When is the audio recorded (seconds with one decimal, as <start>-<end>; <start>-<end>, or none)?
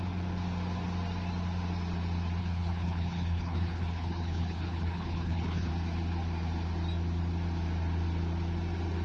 0.0-2.4; 5.7-9.0